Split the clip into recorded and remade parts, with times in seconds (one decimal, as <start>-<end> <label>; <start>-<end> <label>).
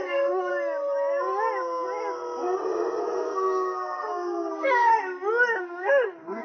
0.0-0.5 remade; 0.5-3.0 recorded; 3.0-4.9 remade; 4.9-5.6 recorded; 5.6-6.4 remade